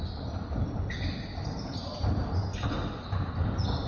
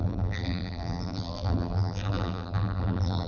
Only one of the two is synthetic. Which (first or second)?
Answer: second